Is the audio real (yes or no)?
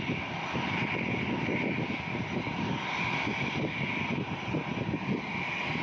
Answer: yes